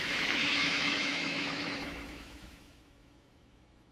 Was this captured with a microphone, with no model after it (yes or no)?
no